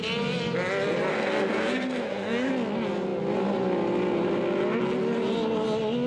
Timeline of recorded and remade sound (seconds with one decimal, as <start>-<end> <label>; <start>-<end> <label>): 0.0-1.1 recorded; 1.1-2.5 remade; 2.5-6.1 recorded